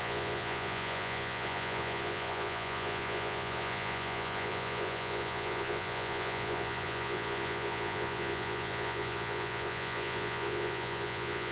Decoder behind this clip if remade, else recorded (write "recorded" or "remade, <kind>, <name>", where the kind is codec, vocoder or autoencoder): remade, vocoder, Vocos